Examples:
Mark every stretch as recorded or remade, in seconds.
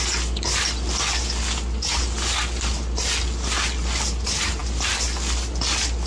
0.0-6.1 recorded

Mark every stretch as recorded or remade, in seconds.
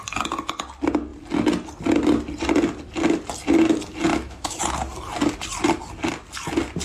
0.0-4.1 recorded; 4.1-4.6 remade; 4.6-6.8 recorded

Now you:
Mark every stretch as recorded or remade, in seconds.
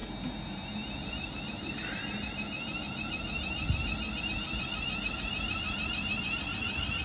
0.0-7.0 recorded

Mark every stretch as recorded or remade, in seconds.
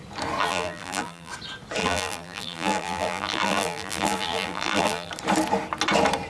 0.0-0.4 recorded; 0.4-1.3 remade; 1.3-1.8 recorded; 1.8-5.1 remade; 5.1-6.3 recorded